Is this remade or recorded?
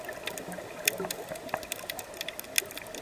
recorded